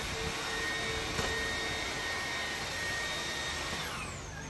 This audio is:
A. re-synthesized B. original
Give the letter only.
B